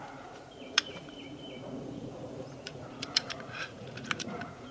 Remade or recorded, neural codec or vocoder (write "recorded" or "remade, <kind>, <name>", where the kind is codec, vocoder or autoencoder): remade, vocoder, Vocos